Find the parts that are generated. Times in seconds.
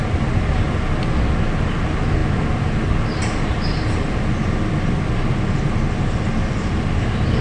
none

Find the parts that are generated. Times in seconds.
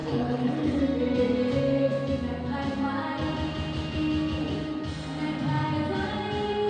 0.0-0.8 (codec, HILCodec)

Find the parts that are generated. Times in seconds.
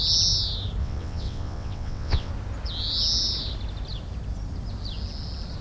0.8-2.3 (vocoder, WaveNeXt)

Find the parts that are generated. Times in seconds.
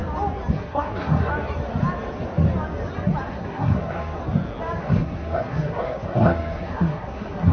0.5-1.3 (codec, SNAC); 3.3-4.2; 4.8-7.5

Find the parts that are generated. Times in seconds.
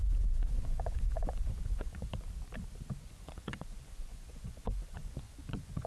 0.0-2.1 (vocoder, Vocos); 3.0-5.9